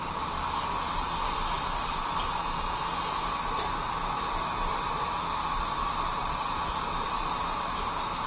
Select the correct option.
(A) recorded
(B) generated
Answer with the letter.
A